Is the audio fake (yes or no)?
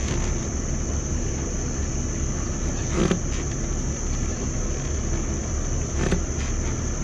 no